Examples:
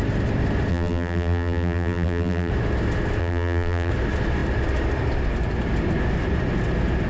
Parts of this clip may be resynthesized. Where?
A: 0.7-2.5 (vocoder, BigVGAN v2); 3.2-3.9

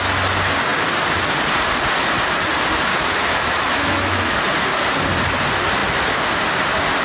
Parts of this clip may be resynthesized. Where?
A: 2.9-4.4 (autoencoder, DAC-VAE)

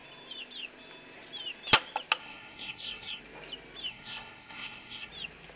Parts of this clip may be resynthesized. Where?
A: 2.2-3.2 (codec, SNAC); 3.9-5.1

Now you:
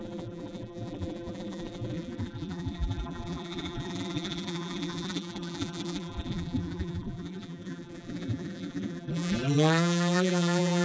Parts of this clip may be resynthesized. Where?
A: 0.0-10.8 (vocoder, BigVGAN v2)

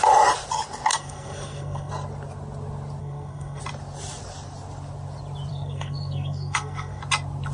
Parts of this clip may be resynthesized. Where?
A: 0.9-1.9 (codec, SNAC); 3.0-3.6; 5.5-7.0